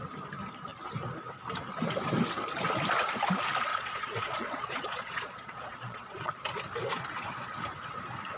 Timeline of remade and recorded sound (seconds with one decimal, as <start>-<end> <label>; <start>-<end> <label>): 0.0-3.7 recorded; 3.7-6.3 remade; 6.3-8.4 recorded